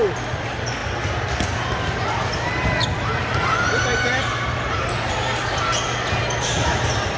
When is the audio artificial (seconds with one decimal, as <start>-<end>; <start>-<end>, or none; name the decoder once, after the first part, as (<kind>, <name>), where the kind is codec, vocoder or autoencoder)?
none